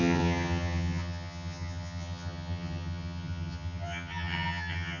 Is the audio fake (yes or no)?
yes